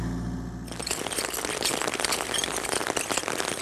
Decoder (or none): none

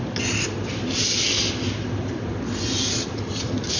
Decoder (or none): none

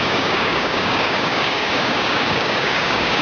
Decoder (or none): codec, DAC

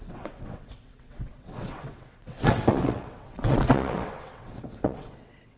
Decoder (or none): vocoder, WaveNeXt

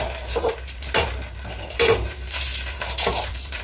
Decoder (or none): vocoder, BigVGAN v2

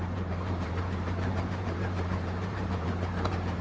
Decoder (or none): vocoder, BigVGAN v2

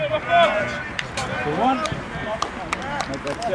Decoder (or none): none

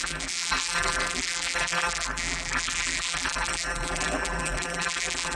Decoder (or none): vocoder, BigVGAN v2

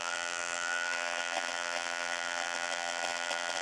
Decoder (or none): vocoder, BigVGAN v2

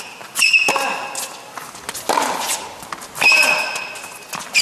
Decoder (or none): none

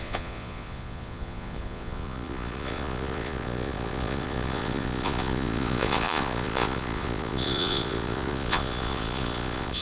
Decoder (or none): vocoder, Vocos